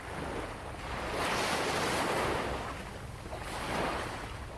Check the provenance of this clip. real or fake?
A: real